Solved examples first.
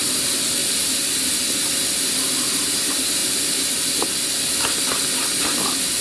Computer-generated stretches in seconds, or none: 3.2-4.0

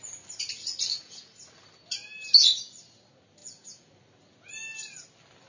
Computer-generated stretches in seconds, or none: 0.9-1.4; 3.4-3.9